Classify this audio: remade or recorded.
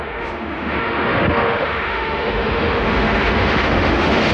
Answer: remade